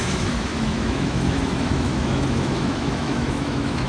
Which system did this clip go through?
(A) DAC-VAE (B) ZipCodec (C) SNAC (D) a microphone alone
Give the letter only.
A